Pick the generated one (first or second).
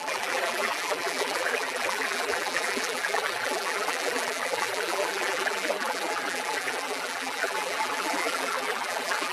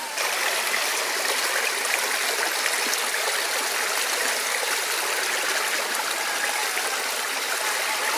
first